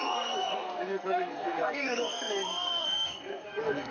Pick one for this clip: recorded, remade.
remade